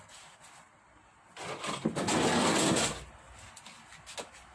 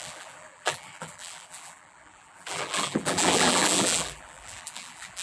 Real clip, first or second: first